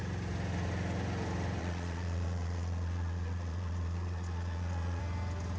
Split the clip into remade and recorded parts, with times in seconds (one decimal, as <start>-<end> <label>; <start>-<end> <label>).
0.0-1.6 recorded; 1.6-5.0 remade; 5.0-5.6 recorded